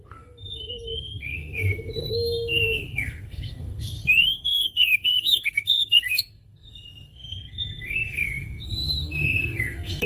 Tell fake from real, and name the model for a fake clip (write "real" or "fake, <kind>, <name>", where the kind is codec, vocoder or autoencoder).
fake, codec, SNAC